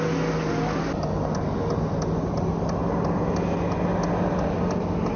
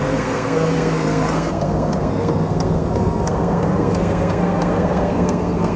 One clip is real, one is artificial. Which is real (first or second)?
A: first